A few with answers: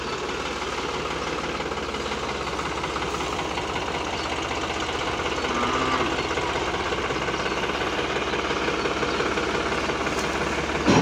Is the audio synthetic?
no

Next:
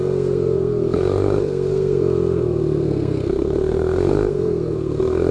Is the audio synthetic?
yes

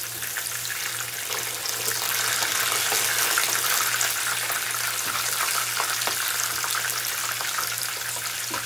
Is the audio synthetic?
no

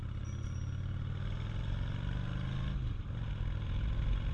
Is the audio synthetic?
no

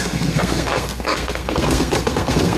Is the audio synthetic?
yes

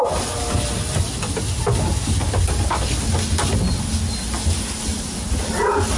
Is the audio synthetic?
no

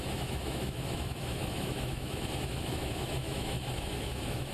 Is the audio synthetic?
yes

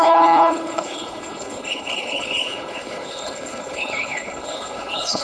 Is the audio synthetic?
yes